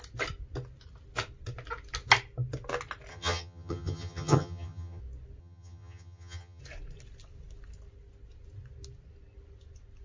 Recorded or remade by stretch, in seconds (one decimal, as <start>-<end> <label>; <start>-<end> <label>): 0.0-3.1 recorded; 3.1-5.0 remade; 5.0-5.4 recorded; 5.4-6.6 remade; 6.6-10.0 recorded